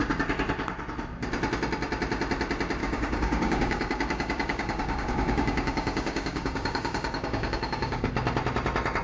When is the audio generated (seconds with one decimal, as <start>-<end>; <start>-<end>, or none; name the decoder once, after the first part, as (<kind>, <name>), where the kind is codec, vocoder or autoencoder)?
2.8-8.1 (codec, DAC)